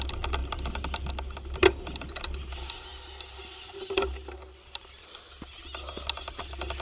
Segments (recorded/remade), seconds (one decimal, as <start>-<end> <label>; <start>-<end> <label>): 0.0-6.8 recorded

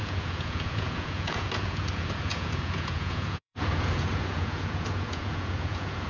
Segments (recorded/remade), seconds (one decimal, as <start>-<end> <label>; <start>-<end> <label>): 0.0-6.1 remade